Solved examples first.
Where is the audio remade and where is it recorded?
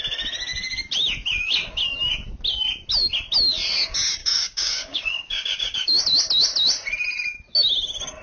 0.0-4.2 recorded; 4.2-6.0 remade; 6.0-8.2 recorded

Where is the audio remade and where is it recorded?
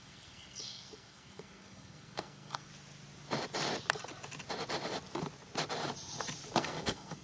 0.0-2.7 remade; 2.7-6.5 recorded; 6.5-7.2 remade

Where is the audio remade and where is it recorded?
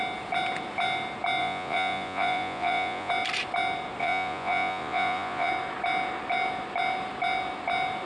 0.0-1.4 recorded; 1.4-3.1 remade; 3.1-4.0 recorded; 4.0-5.5 remade; 5.5-8.1 recorded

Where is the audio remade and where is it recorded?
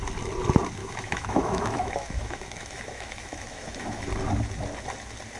0.0-0.8 recorded; 0.8-4.0 remade; 4.0-5.4 recorded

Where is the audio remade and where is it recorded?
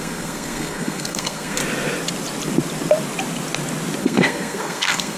0.0-1.6 remade; 1.6-4.0 recorded; 4.0-5.2 remade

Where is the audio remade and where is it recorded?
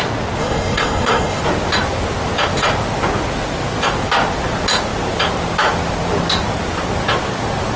0.0-0.4 recorded; 0.4-1.4 remade; 1.4-7.8 recorded